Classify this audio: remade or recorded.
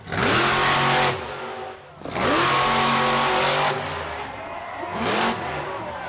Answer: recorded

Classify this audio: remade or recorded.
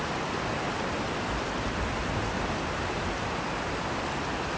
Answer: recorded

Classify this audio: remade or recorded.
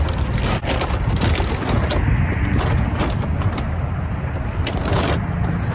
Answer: recorded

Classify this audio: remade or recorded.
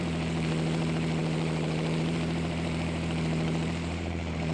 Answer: remade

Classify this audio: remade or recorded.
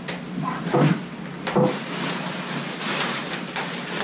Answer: recorded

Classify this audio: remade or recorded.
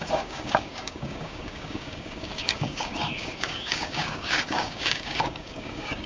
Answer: remade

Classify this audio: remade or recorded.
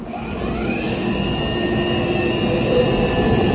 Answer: recorded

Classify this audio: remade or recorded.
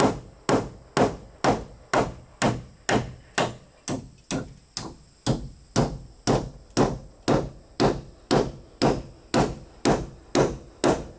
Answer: recorded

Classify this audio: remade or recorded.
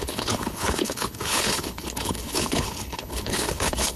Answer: remade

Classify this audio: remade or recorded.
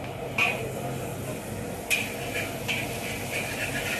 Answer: recorded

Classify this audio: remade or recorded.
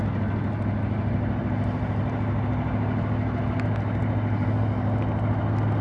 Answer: recorded